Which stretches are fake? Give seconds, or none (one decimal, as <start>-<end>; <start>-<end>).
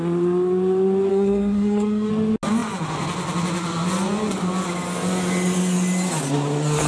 1.1-2.1